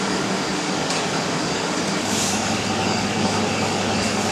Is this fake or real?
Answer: fake